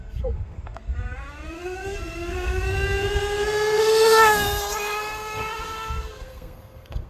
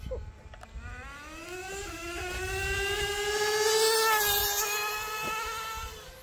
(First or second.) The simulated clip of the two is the first